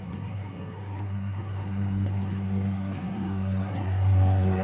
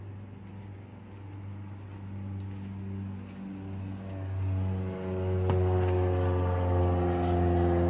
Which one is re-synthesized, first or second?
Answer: first